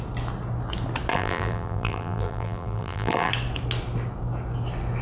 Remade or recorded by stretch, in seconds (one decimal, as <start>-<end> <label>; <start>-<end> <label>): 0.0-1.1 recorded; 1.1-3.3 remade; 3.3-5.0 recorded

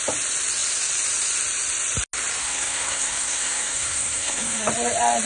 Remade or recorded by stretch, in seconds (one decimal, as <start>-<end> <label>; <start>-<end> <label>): 0.0-2.4 recorded; 2.4-4.7 remade; 4.7-5.3 recorded

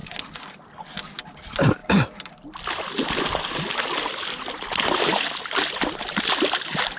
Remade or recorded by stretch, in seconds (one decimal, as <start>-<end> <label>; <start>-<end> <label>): 0.0-7.0 recorded